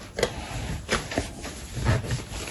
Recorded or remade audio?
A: recorded